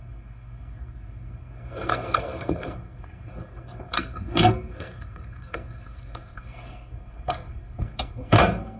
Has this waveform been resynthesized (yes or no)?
yes